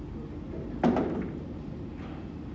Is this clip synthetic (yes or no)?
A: no